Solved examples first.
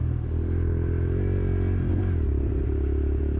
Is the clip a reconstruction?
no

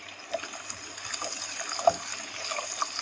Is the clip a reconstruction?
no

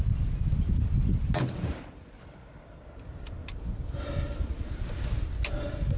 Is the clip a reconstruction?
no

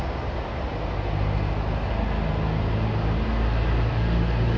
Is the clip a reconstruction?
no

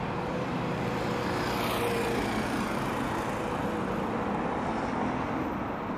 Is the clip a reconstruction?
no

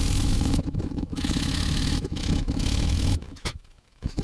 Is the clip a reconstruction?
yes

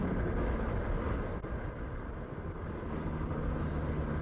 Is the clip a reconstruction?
no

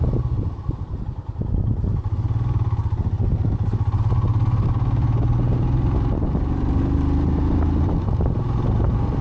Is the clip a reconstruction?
no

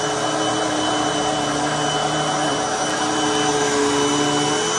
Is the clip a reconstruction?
no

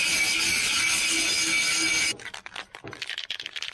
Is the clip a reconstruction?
no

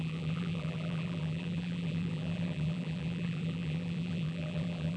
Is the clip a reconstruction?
yes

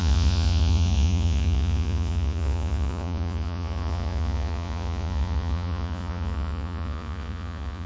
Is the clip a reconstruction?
yes